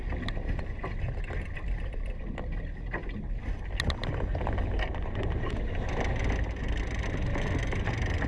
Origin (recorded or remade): recorded